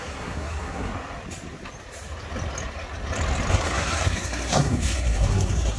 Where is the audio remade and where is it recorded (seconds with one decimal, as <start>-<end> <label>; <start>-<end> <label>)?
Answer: 0.0-0.9 remade; 0.9-3.5 recorded; 3.5-5.8 remade